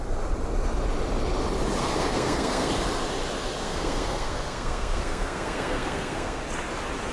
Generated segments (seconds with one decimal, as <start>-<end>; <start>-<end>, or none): 1.8-2.7; 3.6-6.4